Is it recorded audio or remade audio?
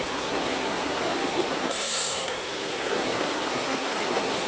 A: remade